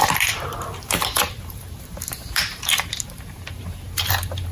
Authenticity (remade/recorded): remade